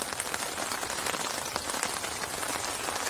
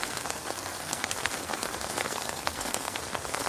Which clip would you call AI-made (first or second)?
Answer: second